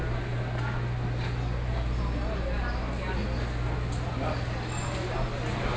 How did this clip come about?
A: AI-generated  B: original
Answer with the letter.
B